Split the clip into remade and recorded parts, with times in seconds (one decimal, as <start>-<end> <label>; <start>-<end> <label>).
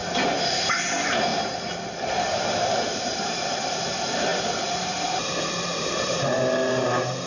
0.0-1.3 remade; 1.3-2.1 recorded; 2.1-7.3 remade